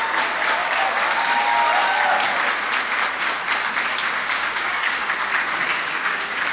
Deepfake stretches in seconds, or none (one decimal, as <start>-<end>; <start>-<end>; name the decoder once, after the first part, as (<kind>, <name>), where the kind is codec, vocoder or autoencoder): 0.6-1.7 (codec, DAC); 3.9-5.1; 5.7-6.5